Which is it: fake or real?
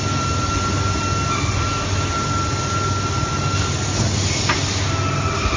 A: real